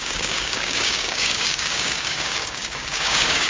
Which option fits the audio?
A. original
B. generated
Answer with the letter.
B